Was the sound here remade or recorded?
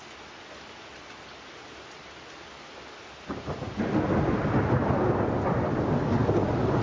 recorded